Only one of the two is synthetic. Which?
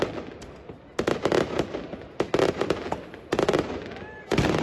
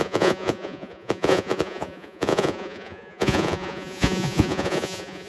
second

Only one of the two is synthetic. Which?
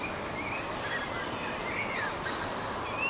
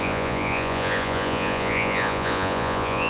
second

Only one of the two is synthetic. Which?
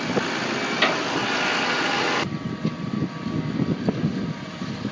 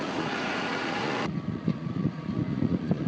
second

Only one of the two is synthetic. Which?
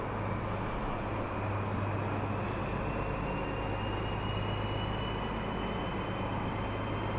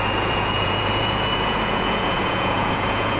second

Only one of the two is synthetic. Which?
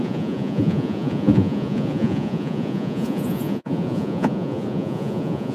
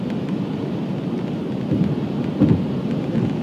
first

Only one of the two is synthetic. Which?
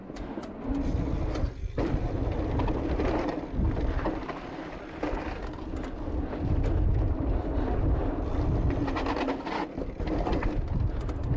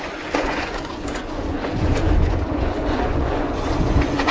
second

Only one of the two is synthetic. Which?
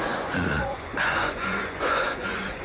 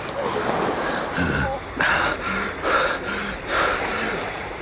first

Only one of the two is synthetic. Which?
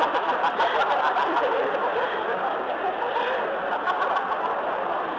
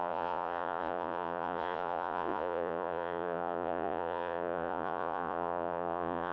second